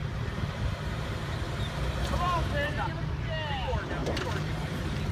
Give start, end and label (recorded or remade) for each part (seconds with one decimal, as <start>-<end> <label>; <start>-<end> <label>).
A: 0.0-3.1 remade; 3.1-5.1 recorded